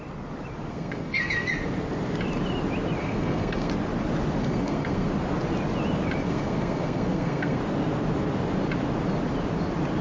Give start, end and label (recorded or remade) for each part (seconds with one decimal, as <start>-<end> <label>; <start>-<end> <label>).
0.0-0.7 recorded; 0.7-1.5 remade; 1.5-3.0 recorded; 3.0-3.7 remade; 3.7-4.4 recorded; 4.4-5.1 remade; 5.1-6.3 recorded; 6.3-7.6 remade; 7.6-10.0 recorded